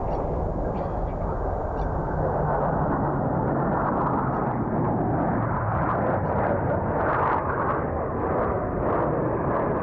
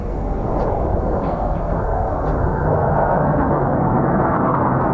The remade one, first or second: second